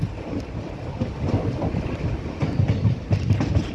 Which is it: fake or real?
real